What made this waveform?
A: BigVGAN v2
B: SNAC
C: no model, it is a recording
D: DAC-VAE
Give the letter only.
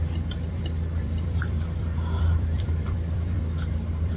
A